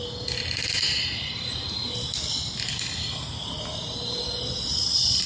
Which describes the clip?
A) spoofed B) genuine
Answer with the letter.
B